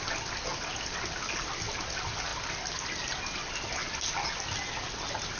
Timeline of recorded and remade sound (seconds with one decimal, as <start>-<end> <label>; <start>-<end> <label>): 0.0-5.4 recorded